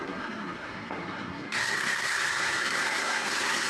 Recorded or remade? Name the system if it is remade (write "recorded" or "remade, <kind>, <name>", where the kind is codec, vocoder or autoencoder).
remade, codec, SNAC